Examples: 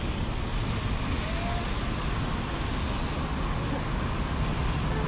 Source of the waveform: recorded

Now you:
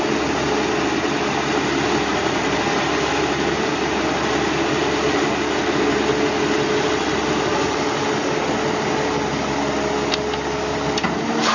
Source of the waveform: recorded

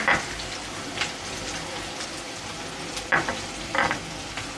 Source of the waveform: recorded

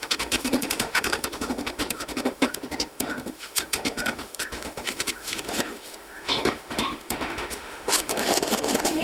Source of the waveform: remade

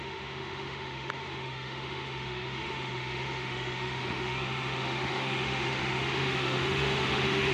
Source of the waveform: remade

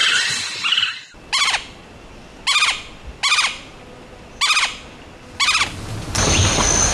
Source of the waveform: recorded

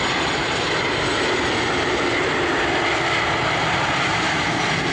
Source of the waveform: recorded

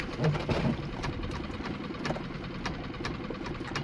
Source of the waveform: recorded